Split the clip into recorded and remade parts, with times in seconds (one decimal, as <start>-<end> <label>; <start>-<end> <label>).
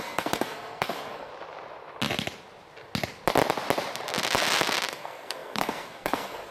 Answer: 0.0-1.3 remade; 1.3-4.9 recorded; 4.9-6.5 remade